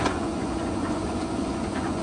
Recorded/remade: remade